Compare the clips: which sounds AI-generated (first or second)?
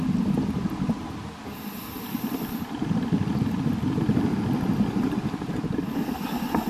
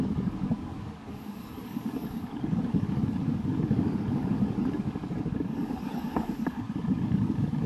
second